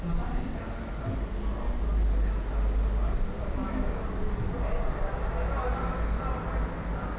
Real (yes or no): yes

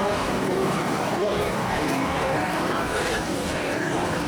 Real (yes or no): no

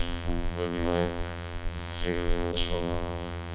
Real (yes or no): no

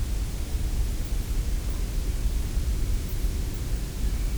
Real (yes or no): yes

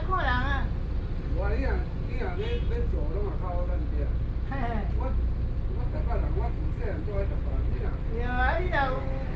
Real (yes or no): yes